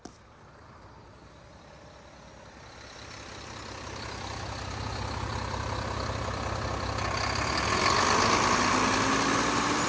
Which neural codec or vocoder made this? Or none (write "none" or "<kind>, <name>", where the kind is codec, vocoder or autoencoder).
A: none